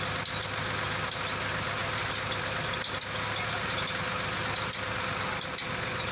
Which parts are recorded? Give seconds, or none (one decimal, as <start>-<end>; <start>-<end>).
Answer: 0.0-6.1